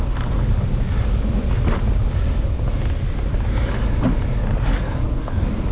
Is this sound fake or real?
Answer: real